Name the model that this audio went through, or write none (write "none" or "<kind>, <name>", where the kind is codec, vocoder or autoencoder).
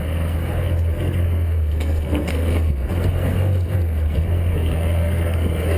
codec, SNAC